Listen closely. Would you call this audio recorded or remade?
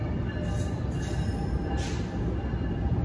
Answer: recorded